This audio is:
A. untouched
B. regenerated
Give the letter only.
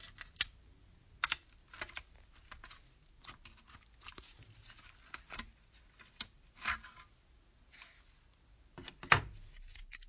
A